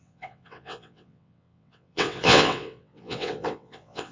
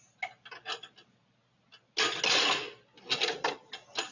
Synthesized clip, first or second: first